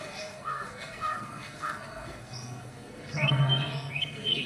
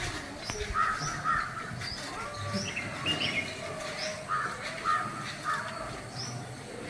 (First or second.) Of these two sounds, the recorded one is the second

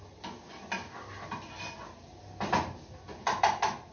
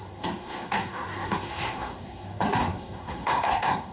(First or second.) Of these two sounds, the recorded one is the first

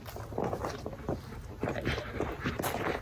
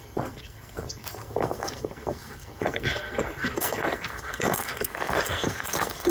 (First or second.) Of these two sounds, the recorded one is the first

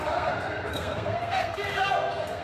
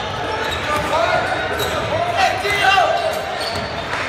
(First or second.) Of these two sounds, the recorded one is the second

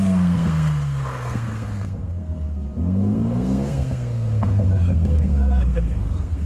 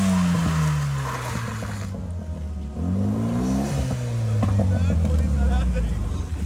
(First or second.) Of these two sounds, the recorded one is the second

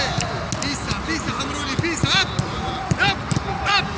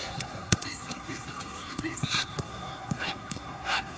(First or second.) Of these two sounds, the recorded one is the first